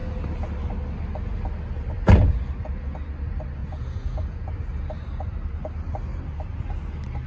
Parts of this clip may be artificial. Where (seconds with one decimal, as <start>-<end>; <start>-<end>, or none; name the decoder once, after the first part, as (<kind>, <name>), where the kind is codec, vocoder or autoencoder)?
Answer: 3.6-4.5 (vocoder, Vocos)

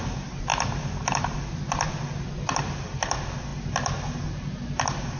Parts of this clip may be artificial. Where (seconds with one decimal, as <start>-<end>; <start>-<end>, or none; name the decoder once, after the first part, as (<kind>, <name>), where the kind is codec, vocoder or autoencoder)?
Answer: none

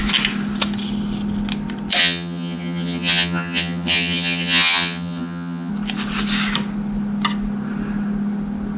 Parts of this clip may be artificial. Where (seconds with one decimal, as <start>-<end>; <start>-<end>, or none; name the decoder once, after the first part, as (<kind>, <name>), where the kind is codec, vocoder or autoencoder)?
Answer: 2.0-5.7 (vocoder, HiFi-GAN)

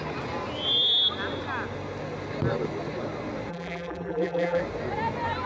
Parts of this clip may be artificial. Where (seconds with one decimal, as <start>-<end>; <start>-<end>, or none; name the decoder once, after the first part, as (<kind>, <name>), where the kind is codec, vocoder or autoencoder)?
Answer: 3.5-4.6 (vocoder, BigVGAN v2)

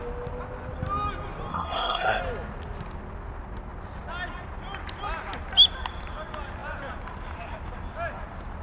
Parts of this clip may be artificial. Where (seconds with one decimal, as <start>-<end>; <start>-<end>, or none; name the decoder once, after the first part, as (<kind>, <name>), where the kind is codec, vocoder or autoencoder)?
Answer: 1.5-2.2 (codec, SNAC)

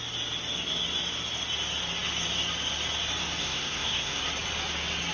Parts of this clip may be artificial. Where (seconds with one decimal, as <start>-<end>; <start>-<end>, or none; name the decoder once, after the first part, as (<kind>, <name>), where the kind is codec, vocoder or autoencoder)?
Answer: 3.4-4.2 (codec, SNAC)

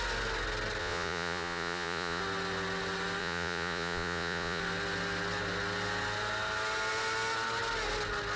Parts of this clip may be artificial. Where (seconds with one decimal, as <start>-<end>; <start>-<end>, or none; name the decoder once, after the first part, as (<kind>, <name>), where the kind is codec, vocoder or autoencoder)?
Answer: 0.8-2.2 (vocoder, Vocos); 3.2-4.6

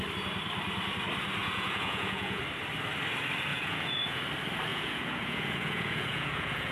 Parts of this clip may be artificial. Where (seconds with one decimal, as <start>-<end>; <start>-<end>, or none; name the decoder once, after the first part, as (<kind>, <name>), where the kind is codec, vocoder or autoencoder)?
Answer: 1.4-2.4 (vocoder, Vocos); 3.5-4.2; 4.7-6.7